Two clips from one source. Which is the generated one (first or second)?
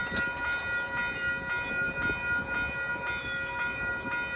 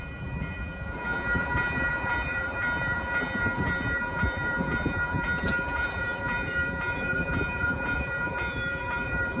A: second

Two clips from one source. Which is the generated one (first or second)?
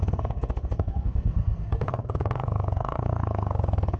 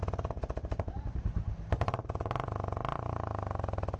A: first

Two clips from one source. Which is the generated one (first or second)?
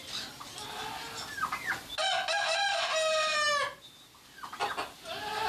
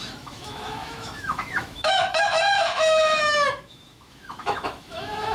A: second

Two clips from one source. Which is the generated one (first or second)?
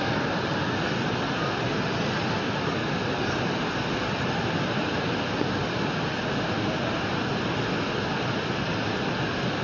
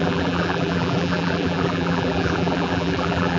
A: second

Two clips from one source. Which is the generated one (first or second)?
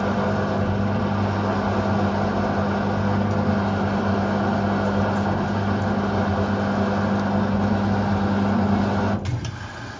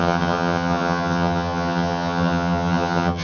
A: second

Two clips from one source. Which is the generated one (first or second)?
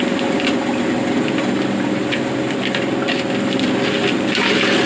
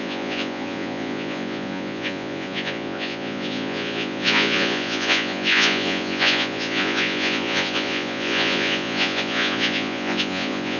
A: second